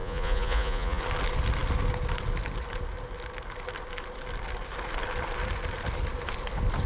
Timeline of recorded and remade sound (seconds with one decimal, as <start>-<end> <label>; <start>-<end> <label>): 0.0-1.0 remade; 1.0-6.9 recorded